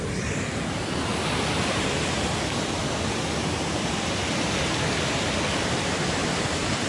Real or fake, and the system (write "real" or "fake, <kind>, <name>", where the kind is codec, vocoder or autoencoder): real